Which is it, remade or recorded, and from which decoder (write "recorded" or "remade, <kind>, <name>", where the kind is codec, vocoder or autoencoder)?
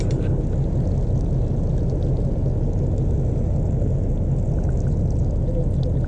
recorded